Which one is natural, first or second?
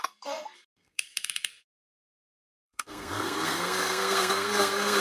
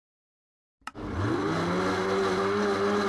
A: second